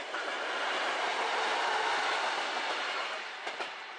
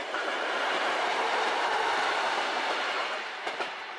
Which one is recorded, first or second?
first